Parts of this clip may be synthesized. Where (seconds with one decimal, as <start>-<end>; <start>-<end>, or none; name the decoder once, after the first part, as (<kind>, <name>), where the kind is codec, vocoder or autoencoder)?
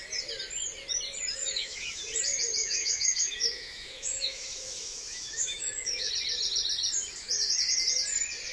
1.4-2.0 (autoencoder, DAC-VAE); 2.6-6.1